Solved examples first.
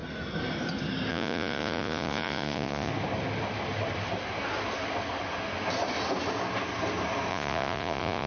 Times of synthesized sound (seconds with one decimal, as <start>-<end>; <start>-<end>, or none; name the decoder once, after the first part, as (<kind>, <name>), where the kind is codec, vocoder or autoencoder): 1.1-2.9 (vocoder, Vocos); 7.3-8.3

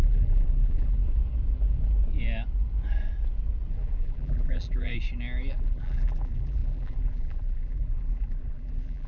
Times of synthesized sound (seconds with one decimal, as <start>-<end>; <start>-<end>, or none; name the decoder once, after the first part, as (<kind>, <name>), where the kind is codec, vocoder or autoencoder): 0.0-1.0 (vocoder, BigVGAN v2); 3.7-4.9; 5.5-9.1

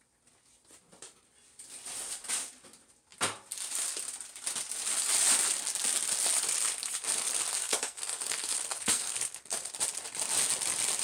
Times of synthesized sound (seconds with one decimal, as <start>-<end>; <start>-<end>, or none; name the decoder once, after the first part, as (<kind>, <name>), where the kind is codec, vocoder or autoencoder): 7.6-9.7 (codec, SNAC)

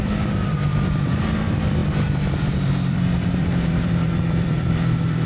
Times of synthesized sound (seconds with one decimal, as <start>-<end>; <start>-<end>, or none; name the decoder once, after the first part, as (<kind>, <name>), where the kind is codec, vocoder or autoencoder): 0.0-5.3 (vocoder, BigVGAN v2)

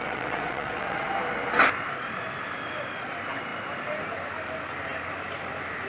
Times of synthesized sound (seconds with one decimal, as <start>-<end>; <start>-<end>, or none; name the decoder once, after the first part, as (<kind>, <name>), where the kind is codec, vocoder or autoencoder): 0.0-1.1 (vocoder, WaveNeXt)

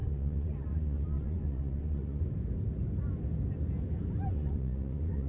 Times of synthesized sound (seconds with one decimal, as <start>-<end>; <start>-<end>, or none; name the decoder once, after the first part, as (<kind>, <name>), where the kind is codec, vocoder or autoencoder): 0.0-2.2 (vocoder, Vocos); 4.3-5.3

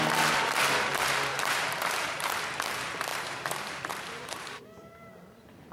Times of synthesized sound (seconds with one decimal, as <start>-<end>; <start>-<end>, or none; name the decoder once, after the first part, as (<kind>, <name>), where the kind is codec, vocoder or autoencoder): 1.3-2.4 (vocoder, BigVGAN v2); 3.1-4.5